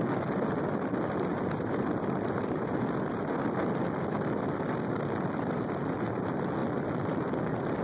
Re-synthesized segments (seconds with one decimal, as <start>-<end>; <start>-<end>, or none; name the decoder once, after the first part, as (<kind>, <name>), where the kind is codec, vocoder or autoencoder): 1.3-2.8 (vocoder, BigVGAN v2)